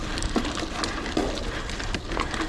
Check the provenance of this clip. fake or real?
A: real